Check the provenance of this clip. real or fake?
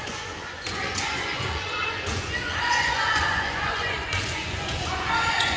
fake